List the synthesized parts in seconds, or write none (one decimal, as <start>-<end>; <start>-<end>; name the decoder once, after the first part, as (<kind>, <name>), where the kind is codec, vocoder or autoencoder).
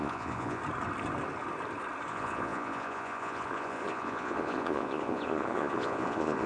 0.0-0.6 (vocoder, Vocos); 2.1-6.5